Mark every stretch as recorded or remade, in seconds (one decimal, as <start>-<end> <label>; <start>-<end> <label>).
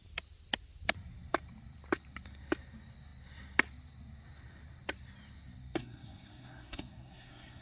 0.0-5.8 recorded; 5.8-7.6 remade